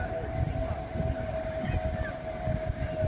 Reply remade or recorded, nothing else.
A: recorded